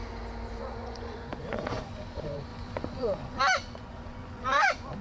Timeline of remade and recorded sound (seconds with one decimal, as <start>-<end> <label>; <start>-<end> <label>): 0.0-0.6 recorded; 0.6-5.0 remade